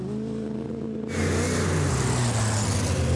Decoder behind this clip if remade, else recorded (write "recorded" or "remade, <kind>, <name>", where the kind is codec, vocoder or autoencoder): recorded